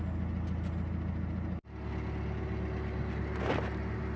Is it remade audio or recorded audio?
recorded